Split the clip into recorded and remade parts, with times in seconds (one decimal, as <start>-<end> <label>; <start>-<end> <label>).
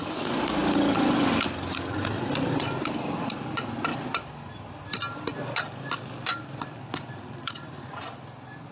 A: 0.0-8.7 recorded